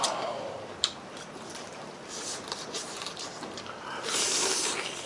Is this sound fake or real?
fake